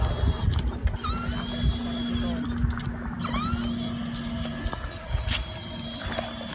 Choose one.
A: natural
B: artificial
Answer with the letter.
A